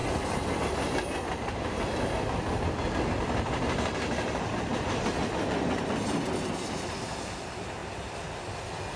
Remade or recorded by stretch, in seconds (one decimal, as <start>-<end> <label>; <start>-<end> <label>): 0.0-9.0 recorded